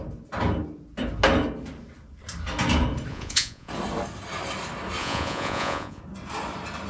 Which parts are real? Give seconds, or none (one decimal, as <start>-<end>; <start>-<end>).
0.0-3.1; 3.7-5.0; 6.0-6.9